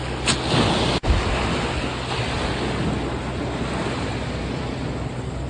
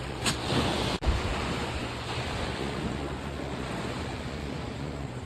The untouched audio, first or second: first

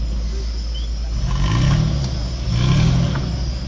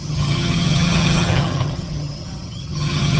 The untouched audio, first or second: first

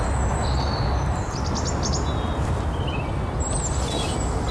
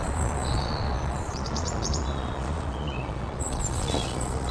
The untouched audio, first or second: first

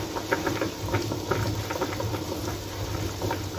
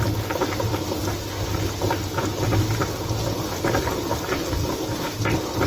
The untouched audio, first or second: second